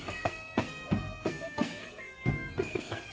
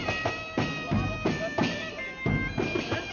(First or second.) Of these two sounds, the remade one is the first